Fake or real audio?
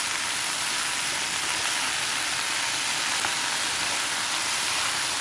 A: real